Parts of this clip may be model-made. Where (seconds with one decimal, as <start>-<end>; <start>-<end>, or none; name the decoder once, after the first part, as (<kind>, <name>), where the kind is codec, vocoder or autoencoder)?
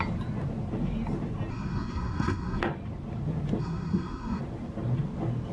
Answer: 1.5-2.6 (codec, SNAC); 3.6-4.4